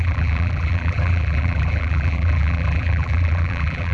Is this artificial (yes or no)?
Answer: yes